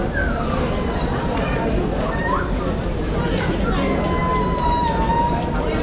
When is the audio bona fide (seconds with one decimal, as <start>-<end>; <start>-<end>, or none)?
3.3-5.8